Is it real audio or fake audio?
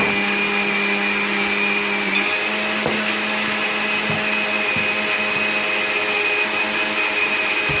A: real